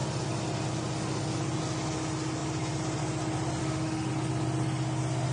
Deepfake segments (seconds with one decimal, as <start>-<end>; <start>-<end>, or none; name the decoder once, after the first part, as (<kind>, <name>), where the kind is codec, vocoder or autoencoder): 3.6-4.1 (autoencoder, DAC-VAE)